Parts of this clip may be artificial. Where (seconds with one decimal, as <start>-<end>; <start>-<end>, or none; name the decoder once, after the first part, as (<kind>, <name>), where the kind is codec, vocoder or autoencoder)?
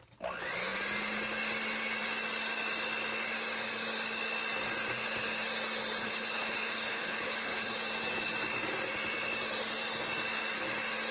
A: 6.0-7.7 (codec, HILCodec)